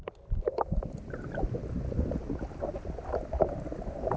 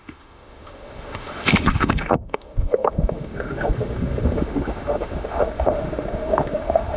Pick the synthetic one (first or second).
second